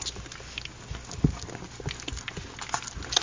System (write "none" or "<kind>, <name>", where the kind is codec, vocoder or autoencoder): none